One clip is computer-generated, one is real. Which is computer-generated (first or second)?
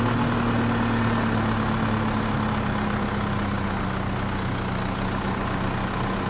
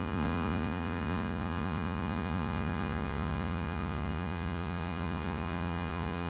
second